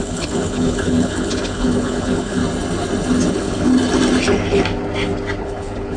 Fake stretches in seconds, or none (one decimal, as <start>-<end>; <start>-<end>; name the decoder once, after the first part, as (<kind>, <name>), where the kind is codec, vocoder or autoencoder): 0.0-2.4 (codec, HILCodec); 3.3-3.7; 5.4-6.0